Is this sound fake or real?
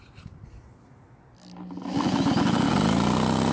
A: real